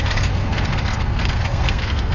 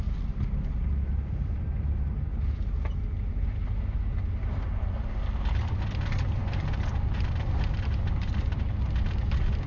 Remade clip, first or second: first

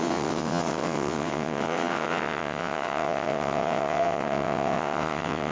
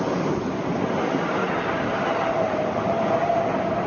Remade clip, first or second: first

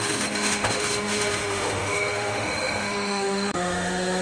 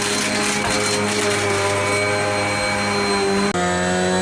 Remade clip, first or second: first